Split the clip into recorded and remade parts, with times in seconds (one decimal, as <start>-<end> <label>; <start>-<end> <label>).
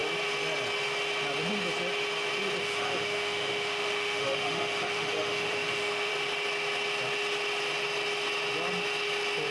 0.0-2.6 recorded; 2.6-6.1 remade; 6.1-9.5 recorded